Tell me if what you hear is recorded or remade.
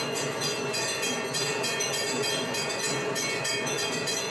remade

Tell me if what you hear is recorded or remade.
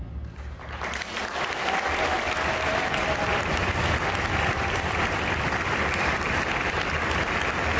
recorded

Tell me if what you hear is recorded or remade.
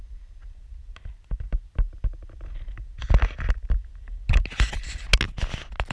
recorded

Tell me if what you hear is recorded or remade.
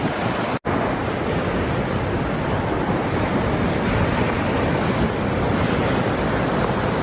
recorded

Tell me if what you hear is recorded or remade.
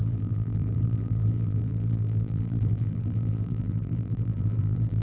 remade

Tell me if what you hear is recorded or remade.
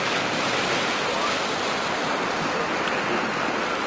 recorded